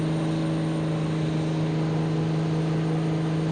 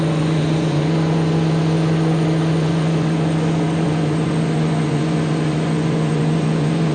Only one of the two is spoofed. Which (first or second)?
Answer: second